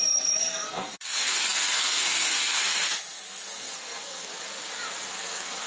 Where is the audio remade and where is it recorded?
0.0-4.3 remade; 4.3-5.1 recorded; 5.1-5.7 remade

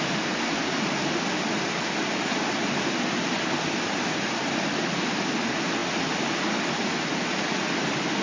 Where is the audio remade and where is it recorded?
0.0-8.2 recorded